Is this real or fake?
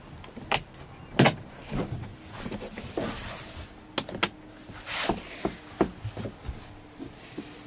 real